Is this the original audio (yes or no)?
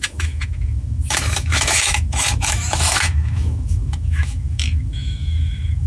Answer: no